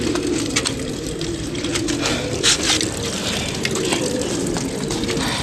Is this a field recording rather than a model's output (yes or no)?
yes